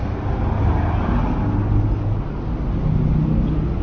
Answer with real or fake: real